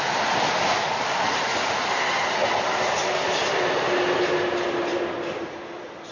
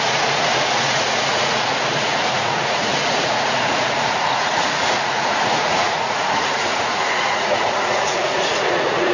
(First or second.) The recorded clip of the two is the first